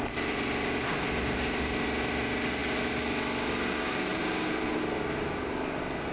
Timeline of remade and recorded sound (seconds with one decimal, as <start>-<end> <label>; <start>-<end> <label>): 0.0-4.1 recorded; 4.1-4.8 remade; 4.8-6.1 recorded